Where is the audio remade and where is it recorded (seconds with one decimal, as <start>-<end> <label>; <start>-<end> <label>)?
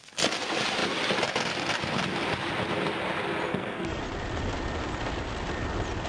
0.0-3.5 recorded; 3.5-4.0 remade; 4.0-6.1 recorded